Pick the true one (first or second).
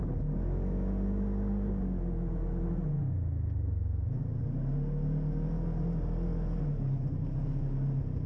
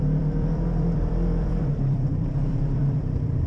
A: first